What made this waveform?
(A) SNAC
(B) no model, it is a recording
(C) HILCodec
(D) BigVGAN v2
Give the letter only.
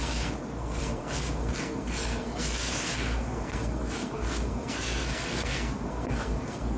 A